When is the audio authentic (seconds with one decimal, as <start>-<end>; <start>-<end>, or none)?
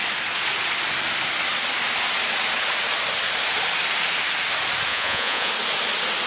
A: 0.0-4.9; 5.5-6.3